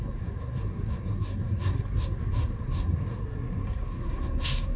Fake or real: fake